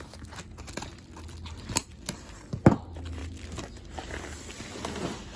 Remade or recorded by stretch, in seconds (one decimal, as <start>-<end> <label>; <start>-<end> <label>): 0.0-5.4 recorded